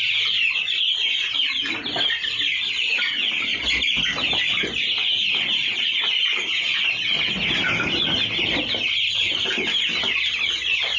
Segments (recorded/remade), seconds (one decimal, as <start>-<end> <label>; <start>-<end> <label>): 0.0-11.0 recorded